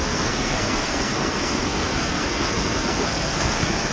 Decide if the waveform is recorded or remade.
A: remade